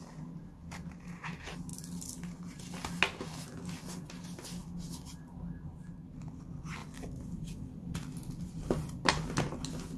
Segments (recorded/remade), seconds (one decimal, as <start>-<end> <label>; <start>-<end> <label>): 0.0-10.0 recorded